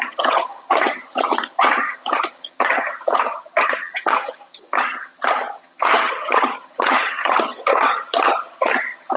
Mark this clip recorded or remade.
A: remade